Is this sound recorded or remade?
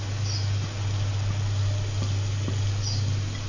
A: recorded